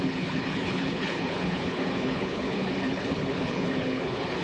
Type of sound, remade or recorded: remade